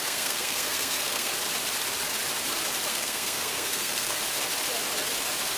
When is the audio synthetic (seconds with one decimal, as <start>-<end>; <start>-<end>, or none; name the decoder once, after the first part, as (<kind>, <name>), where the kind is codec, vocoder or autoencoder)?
0.0-1.3 (codec, SNAC); 2.9-4.2